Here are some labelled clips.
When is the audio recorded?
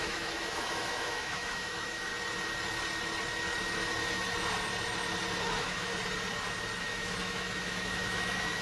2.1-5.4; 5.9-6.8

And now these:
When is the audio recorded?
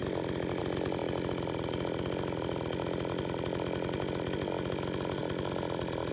0.0-6.1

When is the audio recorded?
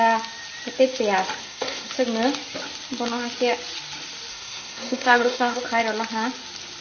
0.0-1.4; 1.9-4.3; 5.6-6.8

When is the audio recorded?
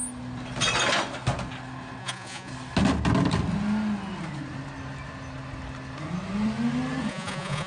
0.0-2.0; 2.5-7.1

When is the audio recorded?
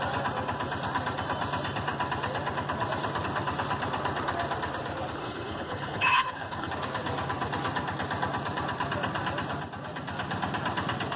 0.0-5.2; 6.7-11.2